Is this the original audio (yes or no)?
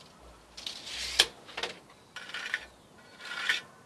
yes